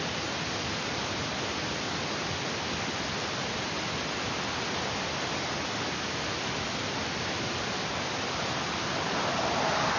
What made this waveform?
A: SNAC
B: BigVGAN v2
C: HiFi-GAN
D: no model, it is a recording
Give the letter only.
D